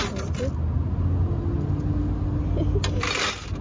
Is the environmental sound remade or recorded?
recorded